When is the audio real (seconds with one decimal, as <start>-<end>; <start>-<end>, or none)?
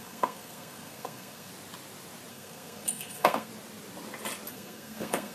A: 1.5-2.3; 3.5-4.5